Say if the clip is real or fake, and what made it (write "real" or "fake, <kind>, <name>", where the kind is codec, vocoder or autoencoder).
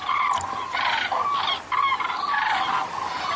real